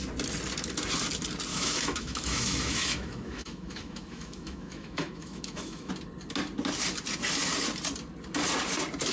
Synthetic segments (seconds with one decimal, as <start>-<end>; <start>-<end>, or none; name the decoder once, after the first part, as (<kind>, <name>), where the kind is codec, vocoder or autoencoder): 1.5-5.9 (autoencoder, DAC-VAE)

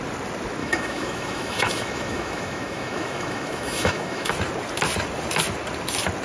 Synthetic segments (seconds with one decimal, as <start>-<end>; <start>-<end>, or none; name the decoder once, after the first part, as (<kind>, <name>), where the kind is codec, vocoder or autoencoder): 0.6-4.3 (autoencoder, DAC-VAE)